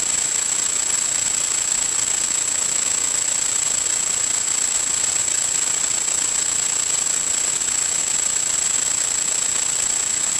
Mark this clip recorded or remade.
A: recorded